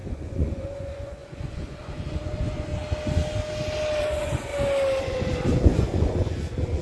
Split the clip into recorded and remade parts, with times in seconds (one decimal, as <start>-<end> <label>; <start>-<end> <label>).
0.0-2.7 remade; 2.7-4.0 recorded; 4.0-4.5 remade; 4.5-5.0 recorded; 5.0-6.8 remade